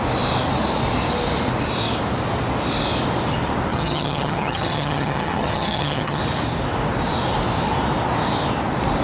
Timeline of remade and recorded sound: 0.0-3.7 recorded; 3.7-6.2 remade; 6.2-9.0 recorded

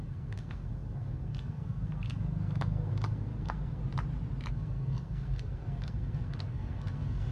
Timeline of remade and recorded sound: 0.0-3.8 remade; 3.8-4.5 recorded; 4.5-7.3 remade

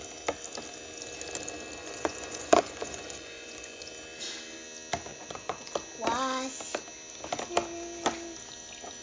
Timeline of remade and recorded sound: 0.0-1.8 recorded; 1.8-3.9 remade; 3.9-5.1 recorded; 5.1-5.7 remade; 5.7-9.0 recorded

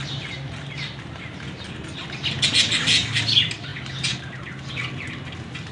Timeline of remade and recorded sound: 0.0-5.7 recorded